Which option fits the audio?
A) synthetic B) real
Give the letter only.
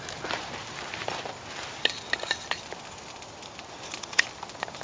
B